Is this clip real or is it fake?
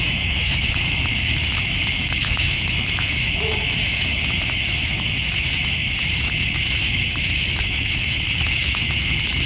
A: fake